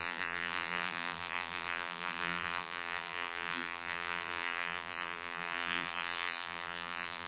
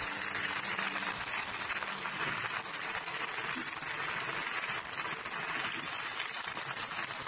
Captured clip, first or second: second